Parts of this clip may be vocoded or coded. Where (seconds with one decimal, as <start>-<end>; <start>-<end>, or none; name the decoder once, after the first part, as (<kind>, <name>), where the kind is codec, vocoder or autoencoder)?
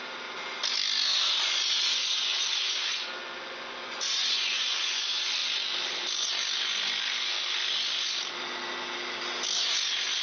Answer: 2.0-5.0 (vocoder, Vocos)